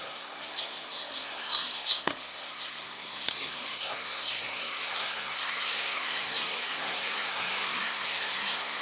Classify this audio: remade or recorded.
remade